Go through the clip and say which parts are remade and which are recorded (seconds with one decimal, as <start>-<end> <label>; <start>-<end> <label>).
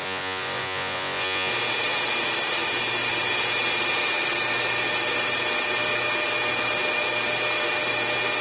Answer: 0.0-1.5 remade; 1.5-8.4 recorded